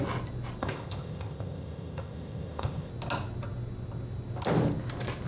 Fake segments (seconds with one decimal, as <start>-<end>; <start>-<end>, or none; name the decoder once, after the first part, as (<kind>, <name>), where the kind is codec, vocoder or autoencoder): 0.6-2.9 (codec, ZipCodec)